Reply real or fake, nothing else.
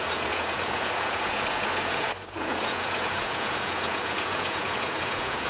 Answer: fake